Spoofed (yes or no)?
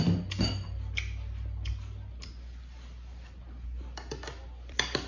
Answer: no